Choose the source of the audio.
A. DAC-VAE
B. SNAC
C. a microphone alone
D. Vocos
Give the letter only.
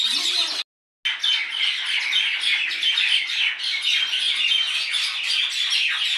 C